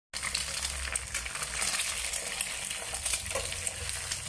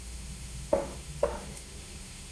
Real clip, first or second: first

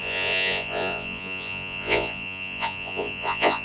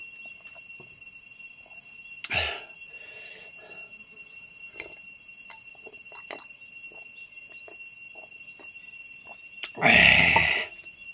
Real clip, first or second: second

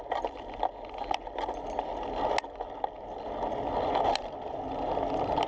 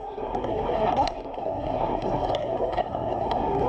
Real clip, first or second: first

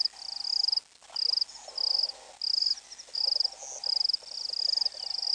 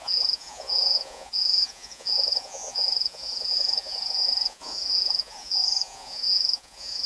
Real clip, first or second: first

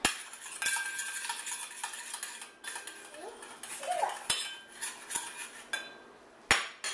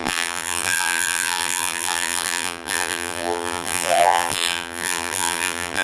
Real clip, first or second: first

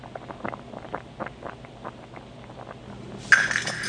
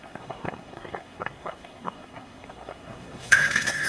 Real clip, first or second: first